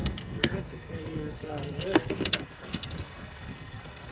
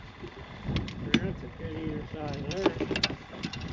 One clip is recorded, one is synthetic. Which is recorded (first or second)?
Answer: second